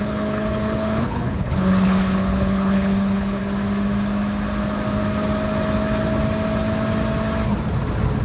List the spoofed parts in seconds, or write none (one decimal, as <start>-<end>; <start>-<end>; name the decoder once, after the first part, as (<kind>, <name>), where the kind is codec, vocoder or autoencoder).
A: 0.0-3.4 (codec, HILCodec)